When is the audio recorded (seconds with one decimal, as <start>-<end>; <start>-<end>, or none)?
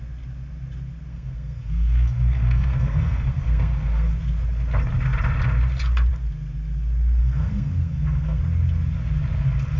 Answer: 0.0-1.1; 4.1-7.2; 8.4-9.8